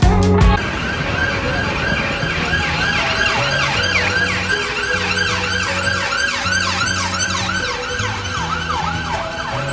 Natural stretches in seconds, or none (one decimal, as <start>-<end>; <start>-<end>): 0.0-9.7